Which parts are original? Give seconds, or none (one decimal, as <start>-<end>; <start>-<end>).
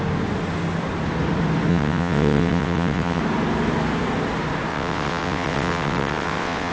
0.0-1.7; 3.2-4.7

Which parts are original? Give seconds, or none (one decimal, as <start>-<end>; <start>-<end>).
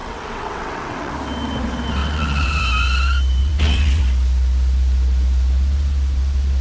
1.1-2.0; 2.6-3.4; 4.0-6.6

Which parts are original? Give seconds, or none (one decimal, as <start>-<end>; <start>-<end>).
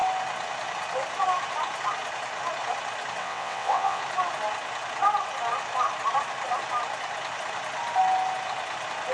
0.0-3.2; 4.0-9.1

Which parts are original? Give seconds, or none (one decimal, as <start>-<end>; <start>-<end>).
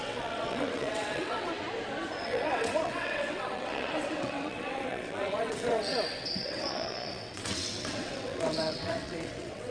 1.5-2.2